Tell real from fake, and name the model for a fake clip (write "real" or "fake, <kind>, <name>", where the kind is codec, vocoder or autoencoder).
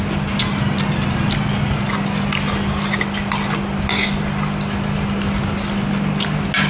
real